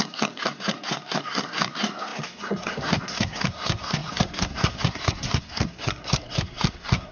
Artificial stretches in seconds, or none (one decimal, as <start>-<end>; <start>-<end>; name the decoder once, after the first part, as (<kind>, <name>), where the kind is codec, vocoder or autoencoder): 0.0-7.1 (codec, SNAC)